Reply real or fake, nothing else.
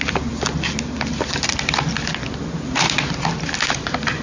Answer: real